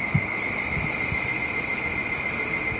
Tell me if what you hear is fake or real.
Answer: real